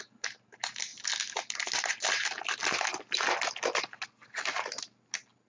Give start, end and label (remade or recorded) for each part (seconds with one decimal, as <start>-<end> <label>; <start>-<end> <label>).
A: 0.0-5.5 recorded

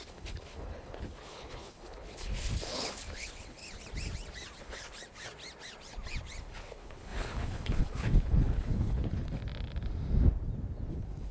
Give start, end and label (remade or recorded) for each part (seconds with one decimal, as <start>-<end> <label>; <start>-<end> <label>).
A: 0.0-3.6 remade; 3.6-4.6 recorded; 4.6-5.0 remade; 5.0-6.4 recorded; 6.4-9.4 remade; 9.4-10.9 recorded; 10.9-11.3 remade

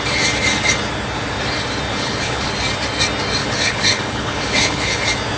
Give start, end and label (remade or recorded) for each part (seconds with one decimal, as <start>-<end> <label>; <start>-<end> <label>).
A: 0.0-1.9 recorded; 1.9-2.5 remade; 2.5-3.4 recorded; 3.4-5.0 remade; 5.0-5.4 recorded